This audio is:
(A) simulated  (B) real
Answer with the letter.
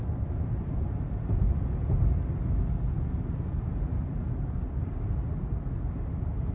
B